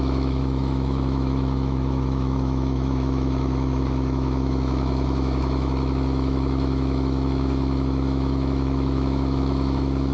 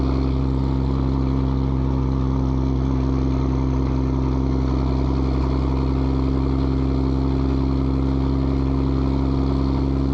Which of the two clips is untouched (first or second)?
second